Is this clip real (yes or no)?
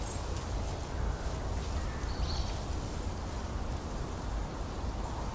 yes